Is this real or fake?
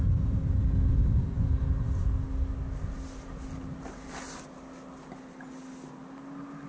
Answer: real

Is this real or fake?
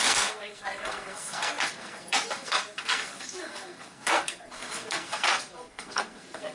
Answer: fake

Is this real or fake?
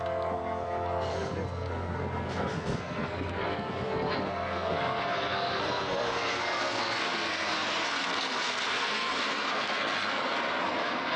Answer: fake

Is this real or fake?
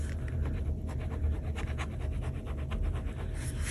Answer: real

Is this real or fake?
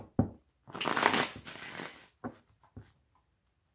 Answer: real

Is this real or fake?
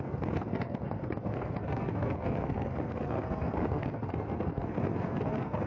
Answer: fake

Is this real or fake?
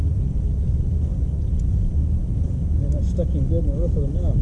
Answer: real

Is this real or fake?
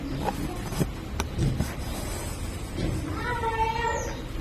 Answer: real